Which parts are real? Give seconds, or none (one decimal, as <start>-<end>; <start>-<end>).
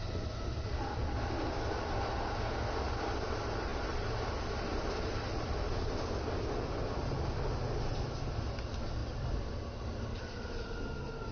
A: 0.0-3.7; 5.7-9.0; 10.8-11.3